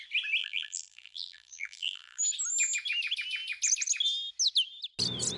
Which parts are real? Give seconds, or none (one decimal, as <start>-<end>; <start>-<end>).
0.0-0.4; 2.2-5.4